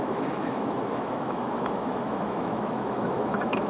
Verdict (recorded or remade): remade